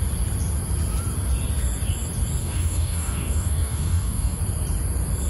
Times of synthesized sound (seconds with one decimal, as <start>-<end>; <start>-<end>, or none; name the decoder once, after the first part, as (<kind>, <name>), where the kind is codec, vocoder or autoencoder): 2.4-4.4 (codec, DAC)